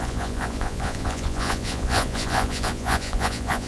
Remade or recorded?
remade